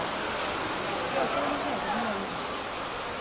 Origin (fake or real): real